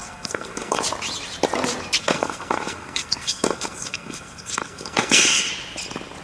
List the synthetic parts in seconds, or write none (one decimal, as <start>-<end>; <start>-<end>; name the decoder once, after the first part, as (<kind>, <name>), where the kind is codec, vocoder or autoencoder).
0.0-0.8 (codec, SNAC); 2.0-5.5